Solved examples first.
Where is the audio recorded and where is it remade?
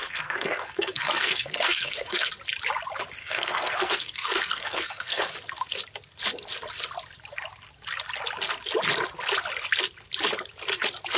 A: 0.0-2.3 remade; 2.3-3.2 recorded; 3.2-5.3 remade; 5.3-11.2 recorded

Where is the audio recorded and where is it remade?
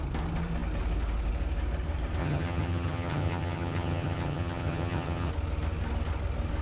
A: 0.0-2.2 recorded; 2.2-5.3 remade; 5.3-6.6 recorded